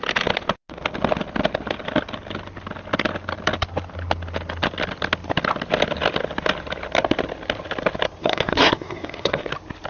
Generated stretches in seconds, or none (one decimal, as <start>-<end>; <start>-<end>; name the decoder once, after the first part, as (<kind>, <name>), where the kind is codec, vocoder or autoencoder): 8.2-9.5 (codec, SNAC)